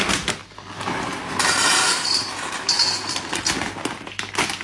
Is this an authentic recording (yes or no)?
yes